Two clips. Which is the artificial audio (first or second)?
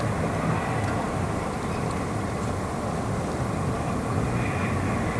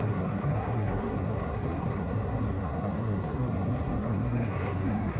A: second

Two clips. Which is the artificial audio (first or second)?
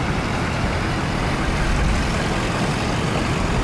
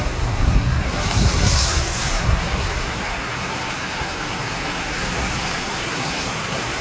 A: second